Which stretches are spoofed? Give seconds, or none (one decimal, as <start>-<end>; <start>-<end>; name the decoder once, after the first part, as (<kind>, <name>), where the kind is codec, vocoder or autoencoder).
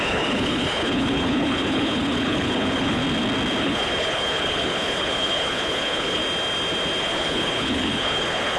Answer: 0.0-3.0 (codec, HILCodec); 3.6-6.2; 7.0-8.6